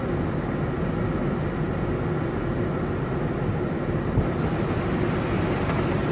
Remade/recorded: recorded